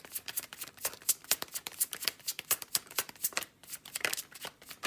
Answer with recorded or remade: remade